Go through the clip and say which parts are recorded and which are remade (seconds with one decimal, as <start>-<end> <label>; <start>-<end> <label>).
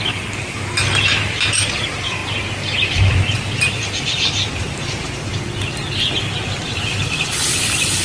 0.0-2.2 remade; 2.2-2.9 recorded; 2.9-5.3 remade; 5.3-6.4 recorded; 6.4-8.0 remade